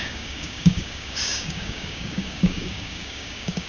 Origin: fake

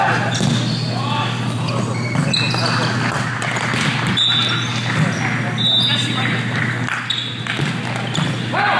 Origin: real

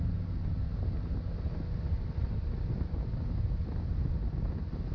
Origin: real